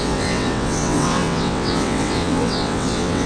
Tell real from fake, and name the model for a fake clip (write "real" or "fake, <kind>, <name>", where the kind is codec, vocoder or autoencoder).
fake, vocoder, WaveNeXt